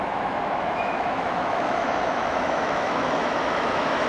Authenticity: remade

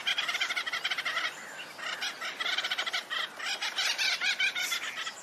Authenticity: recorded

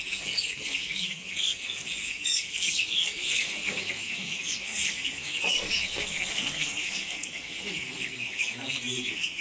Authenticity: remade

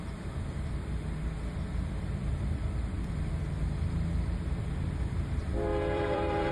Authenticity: remade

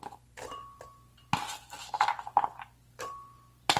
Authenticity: recorded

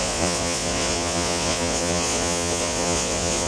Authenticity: remade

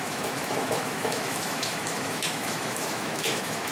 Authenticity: remade